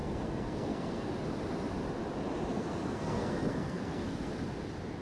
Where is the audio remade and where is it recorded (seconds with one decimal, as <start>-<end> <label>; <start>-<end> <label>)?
0.0-1.1 remade; 1.1-2.5 recorded; 2.5-4.3 remade; 4.3-5.0 recorded